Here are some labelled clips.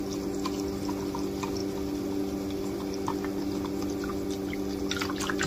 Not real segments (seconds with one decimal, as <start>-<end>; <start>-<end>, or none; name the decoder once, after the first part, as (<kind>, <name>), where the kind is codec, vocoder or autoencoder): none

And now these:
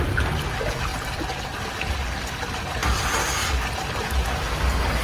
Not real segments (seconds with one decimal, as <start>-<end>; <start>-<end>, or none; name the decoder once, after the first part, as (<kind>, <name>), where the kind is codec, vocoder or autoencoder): none

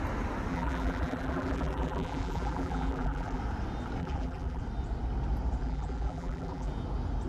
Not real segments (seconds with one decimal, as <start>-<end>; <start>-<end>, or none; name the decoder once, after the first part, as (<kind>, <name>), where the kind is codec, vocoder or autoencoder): 0.5-3.4 (vocoder, BigVGAN v2); 4.0-4.6; 5.6-6.7

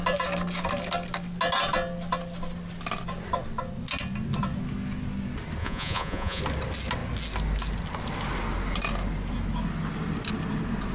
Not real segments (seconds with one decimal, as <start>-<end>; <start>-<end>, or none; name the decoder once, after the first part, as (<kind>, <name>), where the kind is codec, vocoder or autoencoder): 5.6-6.4 (vocoder, Vocos)

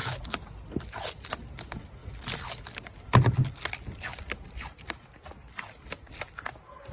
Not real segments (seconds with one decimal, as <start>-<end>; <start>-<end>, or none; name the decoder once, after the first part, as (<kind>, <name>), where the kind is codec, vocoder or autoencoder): none

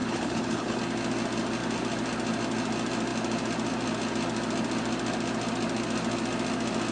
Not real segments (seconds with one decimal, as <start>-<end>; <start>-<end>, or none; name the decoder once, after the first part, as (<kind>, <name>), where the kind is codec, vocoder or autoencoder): 0.0-0.8 (codec, HILCodec)

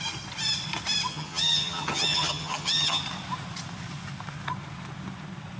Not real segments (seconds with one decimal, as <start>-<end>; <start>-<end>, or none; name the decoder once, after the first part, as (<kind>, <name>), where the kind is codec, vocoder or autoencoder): 1.1-3.0 (vocoder, HiFi-GAN)

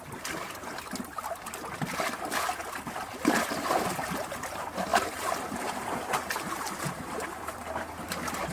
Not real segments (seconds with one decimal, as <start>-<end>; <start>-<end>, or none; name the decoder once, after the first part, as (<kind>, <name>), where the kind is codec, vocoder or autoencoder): 4.9-8.1 (vocoder, BigVGAN v2)